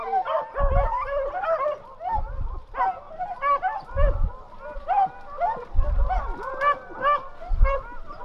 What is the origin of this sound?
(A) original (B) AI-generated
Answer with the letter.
A